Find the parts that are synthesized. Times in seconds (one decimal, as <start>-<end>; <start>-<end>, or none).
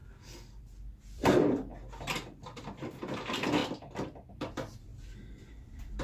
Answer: 0.6-1.7; 2.6-3.6; 4.3-4.9; 5.6-6.0